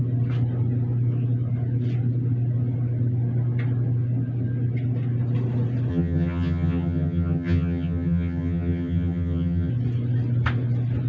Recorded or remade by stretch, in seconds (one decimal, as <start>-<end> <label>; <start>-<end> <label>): 0.0-5.9 recorded; 5.9-9.7 remade; 9.7-11.1 recorded